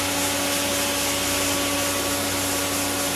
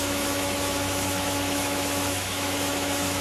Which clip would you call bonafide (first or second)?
first